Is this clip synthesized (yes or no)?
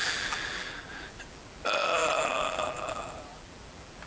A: yes